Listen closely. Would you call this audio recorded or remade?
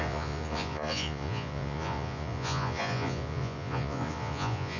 remade